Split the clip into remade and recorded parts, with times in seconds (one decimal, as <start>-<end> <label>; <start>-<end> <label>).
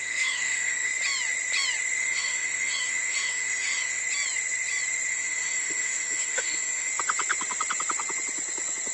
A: 0.0-0.9 remade; 0.9-2.0 recorded; 2.0-4.0 remade; 4.0-5.1 recorded; 5.1-6.9 remade; 6.9-8.9 recorded